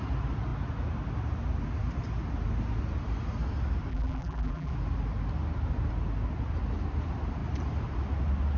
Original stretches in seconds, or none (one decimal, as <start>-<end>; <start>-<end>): 0.0-3.9; 4.7-8.6